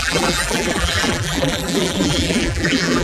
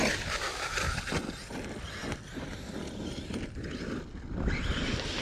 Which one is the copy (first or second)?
first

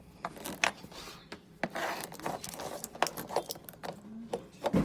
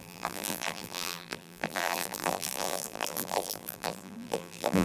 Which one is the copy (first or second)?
second